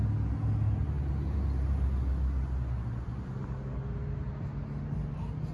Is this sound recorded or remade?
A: recorded